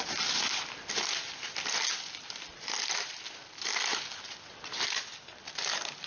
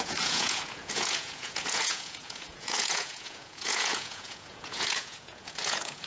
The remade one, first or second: second